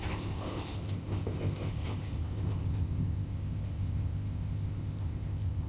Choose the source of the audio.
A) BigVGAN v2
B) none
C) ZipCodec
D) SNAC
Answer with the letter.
C